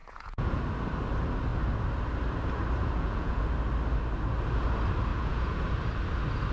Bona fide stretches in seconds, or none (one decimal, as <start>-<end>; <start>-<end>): 0.6-2.8; 3.4-5.1; 5.6-6.5